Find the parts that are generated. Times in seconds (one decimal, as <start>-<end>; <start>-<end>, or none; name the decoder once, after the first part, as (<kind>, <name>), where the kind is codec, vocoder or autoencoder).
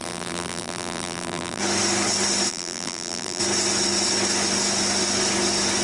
0.0-1.6 (vocoder, BigVGAN v2); 2.5-3.4